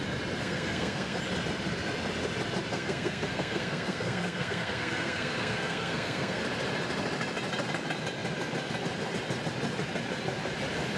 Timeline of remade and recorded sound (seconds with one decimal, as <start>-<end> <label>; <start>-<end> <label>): 0.0-0.4 recorded; 0.4-1.2 remade; 1.2-2.7 recorded; 2.7-6.4 remade; 6.4-11.0 recorded